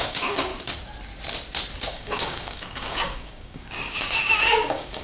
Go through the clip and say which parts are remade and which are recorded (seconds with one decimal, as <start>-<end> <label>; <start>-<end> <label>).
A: 0.0-0.5 remade; 0.5-1.8 recorded; 1.8-5.0 remade